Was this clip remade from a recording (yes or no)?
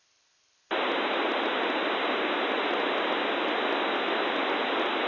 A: no